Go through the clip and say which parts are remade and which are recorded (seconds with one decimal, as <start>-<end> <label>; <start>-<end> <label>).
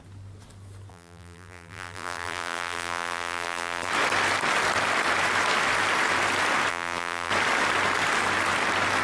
0.0-0.9 recorded; 0.9-3.9 remade; 3.9-6.7 recorded; 6.7-7.3 remade; 7.3-9.0 recorded